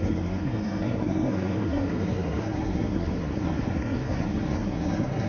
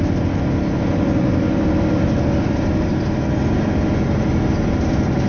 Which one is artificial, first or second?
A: first